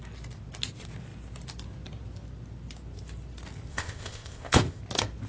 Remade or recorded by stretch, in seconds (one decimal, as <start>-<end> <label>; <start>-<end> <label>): 0.0-3.7 recorded; 3.7-4.8 remade; 4.8-5.3 recorded